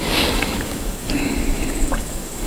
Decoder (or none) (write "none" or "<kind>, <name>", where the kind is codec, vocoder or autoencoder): codec, DAC